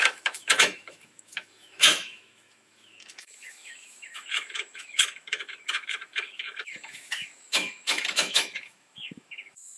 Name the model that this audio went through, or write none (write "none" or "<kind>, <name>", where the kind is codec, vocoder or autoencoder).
autoencoder, DAC-VAE